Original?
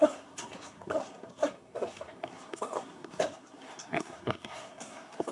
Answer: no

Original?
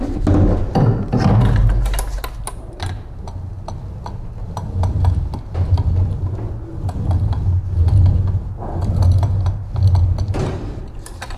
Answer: yes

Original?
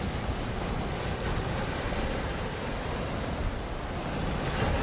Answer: yes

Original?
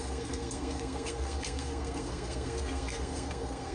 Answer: no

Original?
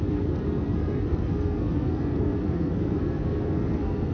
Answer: no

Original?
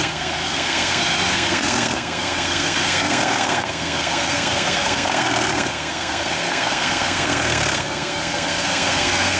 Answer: no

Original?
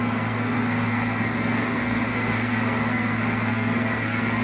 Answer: no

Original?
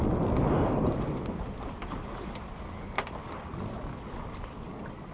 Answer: yes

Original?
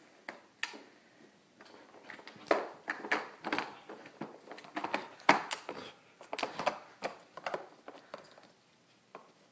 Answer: yes